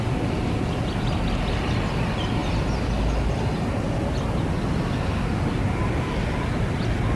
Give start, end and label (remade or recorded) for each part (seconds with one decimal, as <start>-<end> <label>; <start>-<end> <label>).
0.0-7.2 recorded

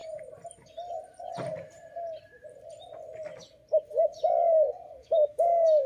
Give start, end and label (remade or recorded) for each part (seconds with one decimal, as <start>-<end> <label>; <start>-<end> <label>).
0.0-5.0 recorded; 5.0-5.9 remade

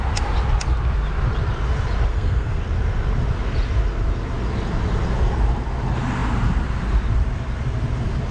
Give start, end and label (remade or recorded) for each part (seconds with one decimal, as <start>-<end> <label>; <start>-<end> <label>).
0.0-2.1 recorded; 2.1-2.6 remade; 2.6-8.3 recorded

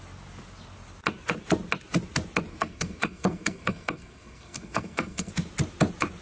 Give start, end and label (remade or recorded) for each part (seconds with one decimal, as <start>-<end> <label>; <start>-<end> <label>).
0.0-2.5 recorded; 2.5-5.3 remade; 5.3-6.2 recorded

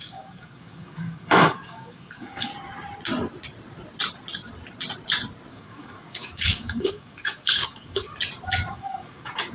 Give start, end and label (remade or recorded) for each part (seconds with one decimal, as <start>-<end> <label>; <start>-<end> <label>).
0.0-2.5 remade; 2.5-5.5 recorded; 5.5-8.1 remade; 8.1-8.7 recorded; 8.7-9.5 remade

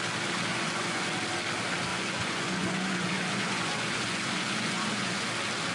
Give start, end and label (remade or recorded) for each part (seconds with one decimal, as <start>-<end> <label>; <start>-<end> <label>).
0.0-0.5 recorded; 0.5-1.2 remade; 1.2-1.9 recorded; 1.9-5.3 remade; 5.3-5.7 recorded

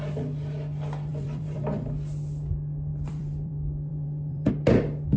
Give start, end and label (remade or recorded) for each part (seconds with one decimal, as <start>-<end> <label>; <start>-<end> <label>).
0.0-1.1 recorded; 1.1-1.9 remade; 1.9-2.9 recorded; 2.9-3.5 remade; 3.5-3.9 recorded; 3.9-4.5 remade; 4.5-5.2 recorded